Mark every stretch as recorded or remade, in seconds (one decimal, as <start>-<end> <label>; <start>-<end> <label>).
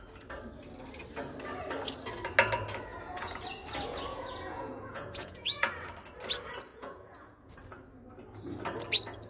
0.0-2.9 recorded; 2.9-3.4 remade; 3.4-4.1 recorded; 4.1-5.7 remade; 5.7-6.7 recorded; 6.7-7.5 remade; 7.5-9.3 recorded